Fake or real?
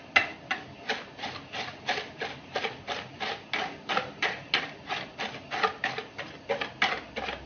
real